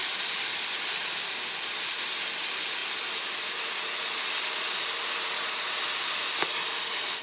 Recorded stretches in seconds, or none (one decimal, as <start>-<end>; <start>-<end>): 0.0-7.2